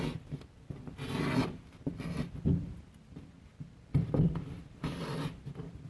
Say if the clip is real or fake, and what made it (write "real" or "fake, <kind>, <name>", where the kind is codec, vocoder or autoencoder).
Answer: real